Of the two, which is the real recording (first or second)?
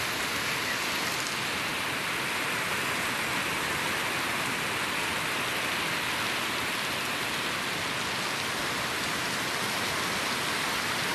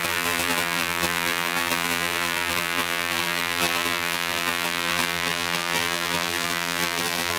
first